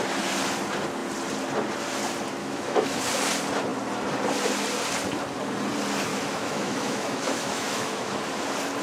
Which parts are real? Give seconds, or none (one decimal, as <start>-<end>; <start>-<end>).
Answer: 0.0-2.4; 3.0-6.1; 8.2-8.8